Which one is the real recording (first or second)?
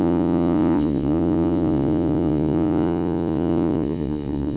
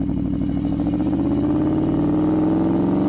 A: second